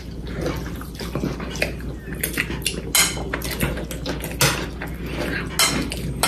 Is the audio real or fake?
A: real